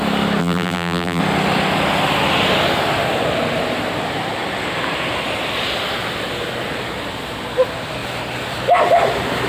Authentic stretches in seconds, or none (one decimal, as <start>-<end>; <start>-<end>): 0.0-0.4; 1.2-9.5